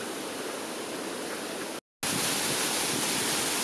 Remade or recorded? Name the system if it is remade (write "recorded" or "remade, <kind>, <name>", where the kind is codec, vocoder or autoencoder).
recorded